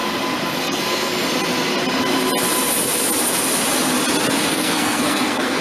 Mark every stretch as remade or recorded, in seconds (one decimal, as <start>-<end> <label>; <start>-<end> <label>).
0.0-0.6 recorded; 0.6-1.1 remade; 1.1-4.5 recorded; 4.5-5.6 remade